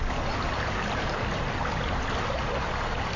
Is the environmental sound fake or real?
real